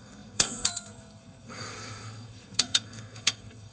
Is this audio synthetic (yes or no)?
yes